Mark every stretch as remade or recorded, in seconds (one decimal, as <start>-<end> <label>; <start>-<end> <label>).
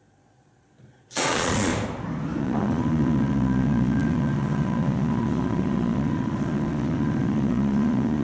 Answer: 0.0-1.7 remade; 1.7-2.4 recorded; 2.4-8.2 remade